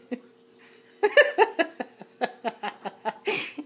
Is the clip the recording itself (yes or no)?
yes